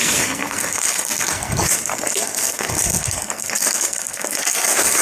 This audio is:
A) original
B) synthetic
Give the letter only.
B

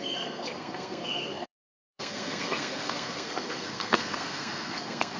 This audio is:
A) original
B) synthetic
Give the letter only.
B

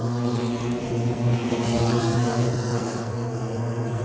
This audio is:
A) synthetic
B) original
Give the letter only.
A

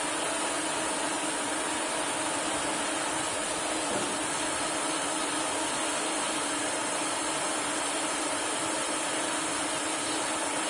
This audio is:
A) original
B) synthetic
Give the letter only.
A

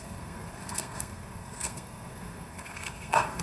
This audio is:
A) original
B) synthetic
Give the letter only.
B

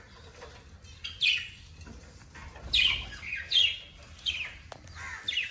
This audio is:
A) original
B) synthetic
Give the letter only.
A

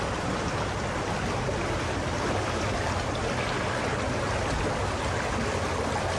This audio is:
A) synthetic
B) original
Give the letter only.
B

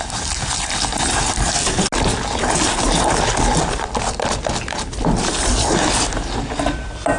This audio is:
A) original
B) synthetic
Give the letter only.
A